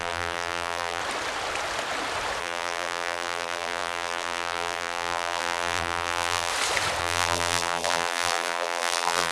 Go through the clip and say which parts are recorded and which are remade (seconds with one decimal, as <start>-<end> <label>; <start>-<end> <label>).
0.0-1.0 remade; 1.0-2.4 recorded; 2.4-6.5 remade; 6.5-7.0 recorded; 7.0-9.3 remade